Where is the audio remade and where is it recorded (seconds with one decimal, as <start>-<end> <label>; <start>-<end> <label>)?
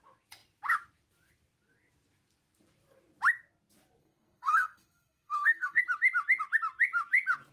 0.0-4.0 recorded; 4.0-5.8 remade; 5.8-7.5 recorded